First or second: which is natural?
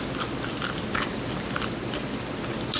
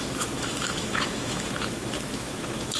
first